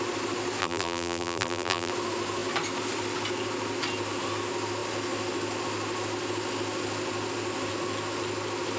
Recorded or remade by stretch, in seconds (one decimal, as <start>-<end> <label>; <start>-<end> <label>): 0.0-0.6 recorded; 0.6-1.9 remade; 1.9-8.8 recorded